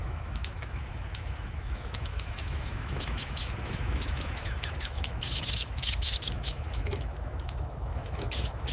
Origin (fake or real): fake